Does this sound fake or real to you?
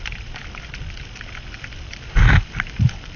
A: real